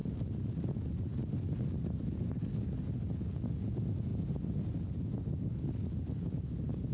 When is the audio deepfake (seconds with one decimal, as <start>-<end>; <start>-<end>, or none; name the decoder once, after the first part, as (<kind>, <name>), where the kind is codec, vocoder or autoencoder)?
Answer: none